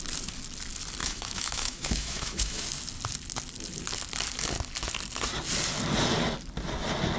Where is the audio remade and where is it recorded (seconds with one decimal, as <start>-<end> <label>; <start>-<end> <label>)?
0.0-1.0 recorded; 1.0-2.6 remade; 2.6-7.2 recorded